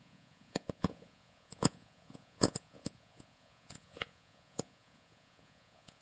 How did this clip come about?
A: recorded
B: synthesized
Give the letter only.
B